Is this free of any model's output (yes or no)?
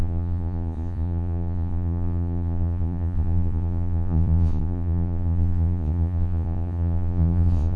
no